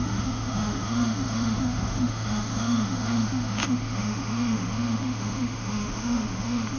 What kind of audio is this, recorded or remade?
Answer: remade